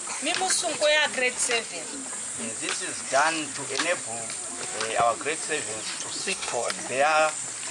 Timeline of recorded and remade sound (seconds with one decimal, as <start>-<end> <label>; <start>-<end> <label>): 0.0-6.2 recorded; 6.2-6.7 remade; 6.7-7.7 recorded